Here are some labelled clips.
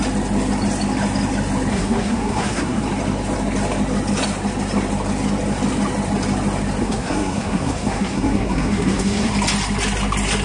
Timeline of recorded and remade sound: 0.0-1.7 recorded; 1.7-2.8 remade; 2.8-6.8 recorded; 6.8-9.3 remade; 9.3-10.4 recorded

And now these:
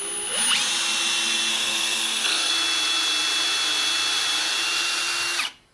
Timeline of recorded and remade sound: 0.0-1.5 recorded; 1.5-2.5 remade; 2.5-5.7 recorded

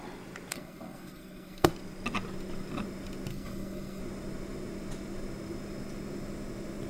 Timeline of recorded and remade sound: 0.0-0.5 recorded; 0.5-1.7 remade; 1.7-3.3 recorded; 3.3-4.0 remade; 4.0-6.9 recorded

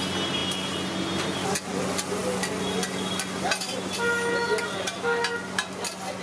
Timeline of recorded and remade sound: 0.0-6.2 recorded